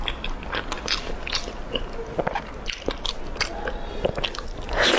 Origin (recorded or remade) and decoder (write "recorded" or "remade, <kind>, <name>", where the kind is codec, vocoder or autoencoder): recorded